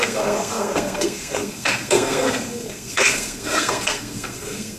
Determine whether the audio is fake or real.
fake